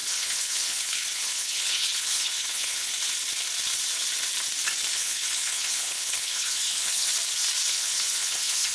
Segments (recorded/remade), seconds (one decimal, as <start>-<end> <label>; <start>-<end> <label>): 0.0-2.9 remade; 2.9-4.9 recorded; 4.9-7.1 remade; 7.1-7.7 recorded; 7.7-8.7 remade